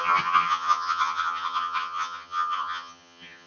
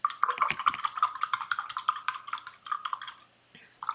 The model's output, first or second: first